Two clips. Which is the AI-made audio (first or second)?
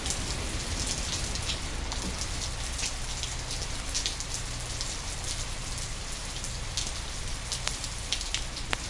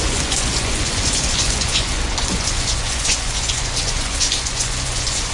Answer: second